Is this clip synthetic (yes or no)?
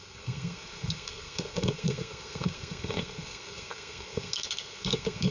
yes